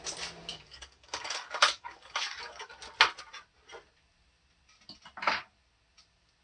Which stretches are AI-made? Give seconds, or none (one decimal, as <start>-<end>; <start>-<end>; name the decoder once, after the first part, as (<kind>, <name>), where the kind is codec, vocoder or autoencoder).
0.5-2.7 (codec, DAC)